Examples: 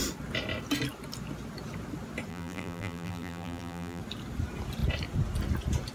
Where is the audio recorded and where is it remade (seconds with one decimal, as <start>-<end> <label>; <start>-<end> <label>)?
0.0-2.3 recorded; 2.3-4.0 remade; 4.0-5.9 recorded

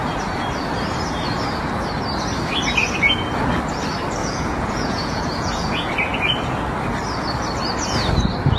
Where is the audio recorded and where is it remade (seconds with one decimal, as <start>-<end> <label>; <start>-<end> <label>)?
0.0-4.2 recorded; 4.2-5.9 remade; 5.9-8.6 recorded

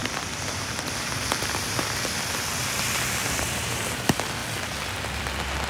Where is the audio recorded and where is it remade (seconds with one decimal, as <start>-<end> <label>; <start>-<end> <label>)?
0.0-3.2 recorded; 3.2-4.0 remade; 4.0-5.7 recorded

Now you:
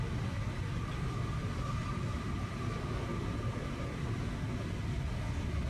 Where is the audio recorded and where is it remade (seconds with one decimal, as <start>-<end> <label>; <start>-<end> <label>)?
0.0-1.8 recorded; 1.8-2.4 remade; 2.4-3.1 recorded; 3.1-4.6 remade; 4.6-5.7 recorded

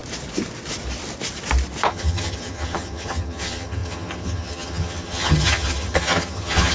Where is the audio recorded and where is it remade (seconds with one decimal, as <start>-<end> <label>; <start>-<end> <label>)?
0.0-1.9 recorded; 1.9-6.7 remade

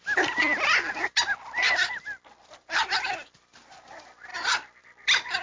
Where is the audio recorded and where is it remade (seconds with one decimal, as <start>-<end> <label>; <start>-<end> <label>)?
0.0-5.4 recorded

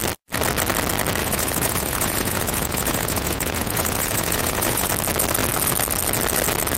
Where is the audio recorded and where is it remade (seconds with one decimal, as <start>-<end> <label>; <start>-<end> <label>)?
0.0-1.2 recorded; 1.2-4.9 remade; 4.9-6.8 recorded

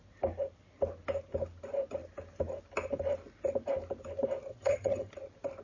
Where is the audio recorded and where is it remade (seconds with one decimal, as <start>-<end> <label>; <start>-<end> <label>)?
0.0-4.5 recorded; 4.5-5.1 remade; 5.1-5.6 recorded